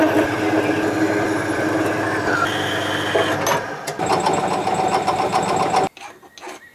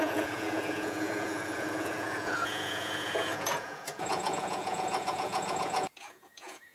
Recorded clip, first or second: first